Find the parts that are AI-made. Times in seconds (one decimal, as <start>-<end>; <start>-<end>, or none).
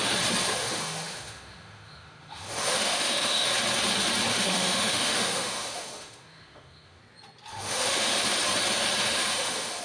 0.6-3.5; 4.3-7.0; 7.5-8.1; 9.0-9.8